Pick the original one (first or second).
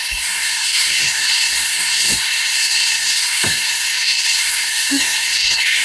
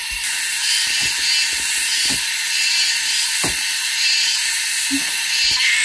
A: second